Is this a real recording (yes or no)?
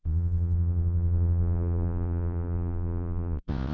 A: no